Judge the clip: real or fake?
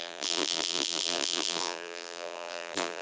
fake